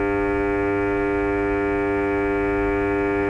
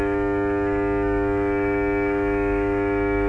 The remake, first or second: second